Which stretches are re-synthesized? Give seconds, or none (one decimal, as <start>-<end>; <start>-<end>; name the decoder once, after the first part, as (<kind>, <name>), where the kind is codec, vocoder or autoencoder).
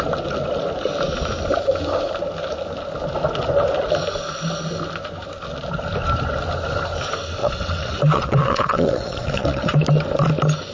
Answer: 7.4-9.8 (vocoder, WaveNeXt)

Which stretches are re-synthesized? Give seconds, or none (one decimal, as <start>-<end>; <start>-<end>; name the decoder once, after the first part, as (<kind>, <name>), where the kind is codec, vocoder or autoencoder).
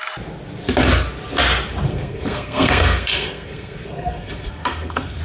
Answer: 1.9-5.2 (codec, SNAC)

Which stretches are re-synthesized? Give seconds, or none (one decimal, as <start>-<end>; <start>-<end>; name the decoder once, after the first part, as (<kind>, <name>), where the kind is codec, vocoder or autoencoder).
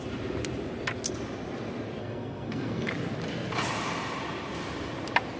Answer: 2.0-2.9 (codec, SNAC)